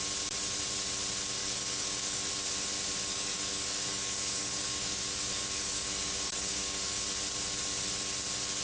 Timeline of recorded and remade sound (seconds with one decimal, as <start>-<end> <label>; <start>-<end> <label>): 0.0-1.4 recorded; 1.4-2.3 remade; 2.3-3.1 recorded; 3.1-7.0 remade; 7.0-8.6 recorded